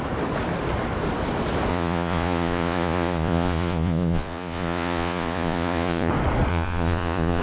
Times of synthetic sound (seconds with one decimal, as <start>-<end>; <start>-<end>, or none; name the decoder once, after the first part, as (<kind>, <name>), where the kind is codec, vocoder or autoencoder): 1.7-6.1 (vocoder, Vocos); 6.5-7.4